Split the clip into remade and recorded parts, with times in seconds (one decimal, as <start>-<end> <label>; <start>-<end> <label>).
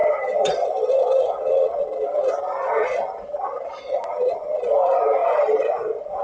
0.0-0.9 remade; 0.9-5.2 recorded; 5.2-6.2 remade